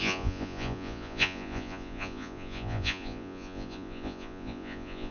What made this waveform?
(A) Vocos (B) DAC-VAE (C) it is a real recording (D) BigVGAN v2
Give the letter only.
A